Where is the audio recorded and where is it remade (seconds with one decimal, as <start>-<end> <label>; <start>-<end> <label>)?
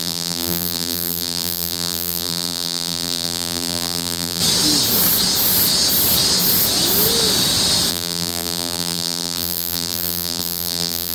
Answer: 0.0-4.4 remade; 4.4-7.9 recorded; 7.9-11.1 remade